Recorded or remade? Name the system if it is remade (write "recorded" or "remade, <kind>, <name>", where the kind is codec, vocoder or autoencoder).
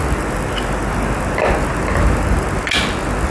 recorded